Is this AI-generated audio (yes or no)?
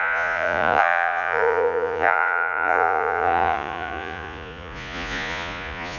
yes